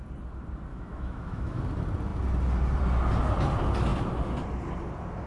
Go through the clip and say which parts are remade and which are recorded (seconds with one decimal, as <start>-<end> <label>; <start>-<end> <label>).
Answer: 0.0-0.7 recorded; 0.7-1.6 remade; 1.6-5.3 recorded